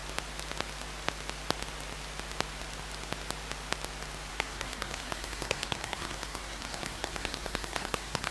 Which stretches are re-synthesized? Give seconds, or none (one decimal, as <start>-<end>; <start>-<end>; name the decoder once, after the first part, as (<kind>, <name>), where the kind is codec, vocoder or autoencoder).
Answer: 4.3-8.3 (codec, SNAC)